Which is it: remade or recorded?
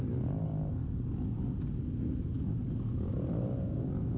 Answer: recorded